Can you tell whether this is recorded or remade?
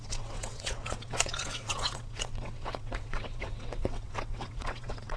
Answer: remade